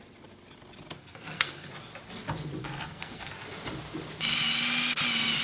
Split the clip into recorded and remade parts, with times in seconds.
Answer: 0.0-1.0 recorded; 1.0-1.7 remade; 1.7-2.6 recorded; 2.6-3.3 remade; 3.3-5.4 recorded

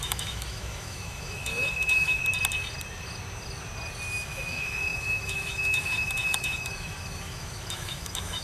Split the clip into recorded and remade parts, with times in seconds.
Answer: 0.0-2.2 remade; 2.2-4.1 recorded; 4.1-8.4 remade

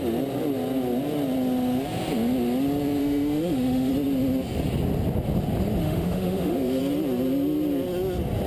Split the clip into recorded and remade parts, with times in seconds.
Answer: 0.0-3.0 recorded; 3.0-3.9 remade; 3.9-5.8 recorded; 5.8-6.8 remade; 6.8-8.5 recorded

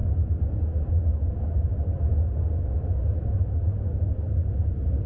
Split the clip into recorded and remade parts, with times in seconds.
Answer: 0.0-5.1 recorded

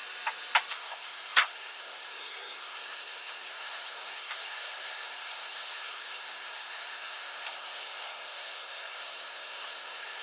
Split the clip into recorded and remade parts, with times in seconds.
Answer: 0.0-0.7 recorded; 0.7-10.2 remade

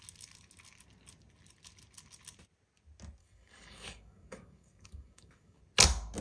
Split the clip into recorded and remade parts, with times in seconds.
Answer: 0.0-3.2 recorded; 3.2-5.6 remade; 5.6-6.2 recorded

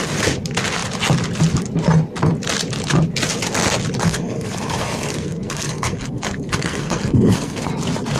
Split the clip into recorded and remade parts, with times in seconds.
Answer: 0.0-4.0 recorded; 4.0-7.7 remade; 7.7-8.2 recorded